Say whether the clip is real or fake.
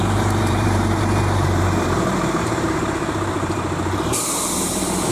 fake